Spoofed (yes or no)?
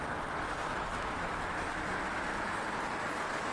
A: no